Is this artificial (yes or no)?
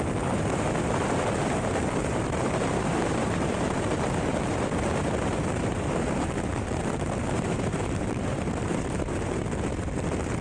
yes